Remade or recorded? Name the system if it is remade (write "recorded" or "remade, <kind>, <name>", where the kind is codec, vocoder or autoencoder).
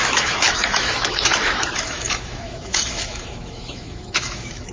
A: remade, autoencoder, DAC-VAE